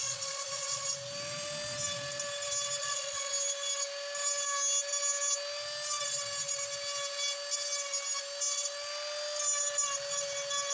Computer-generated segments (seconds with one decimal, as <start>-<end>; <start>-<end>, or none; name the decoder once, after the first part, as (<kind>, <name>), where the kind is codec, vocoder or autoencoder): 0.0-0.8 (vocoder, Vocos); 2.8-3.3